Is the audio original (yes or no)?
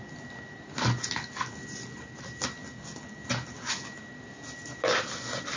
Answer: yes